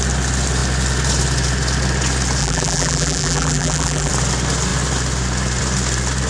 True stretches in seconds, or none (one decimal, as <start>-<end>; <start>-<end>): 0.0-2.4; 4.1-6.3